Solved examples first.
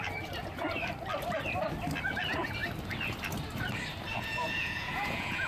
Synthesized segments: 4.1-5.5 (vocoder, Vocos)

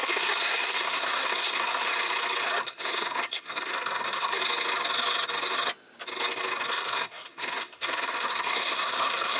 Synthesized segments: 0.0-1.9 (codec, SNAC); 2.6-4.4; 6.7-9.4

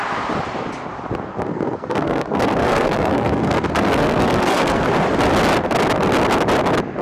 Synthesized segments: 1.3-4.9 (codec, SNAC)

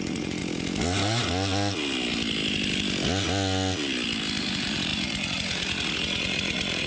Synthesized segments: 0.0-0.4 (vocoder, Vocos); 4.4-6.9

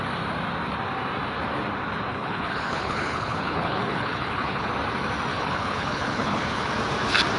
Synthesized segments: 2.1-4.7 (codec, HILCodec); 5.3-6.7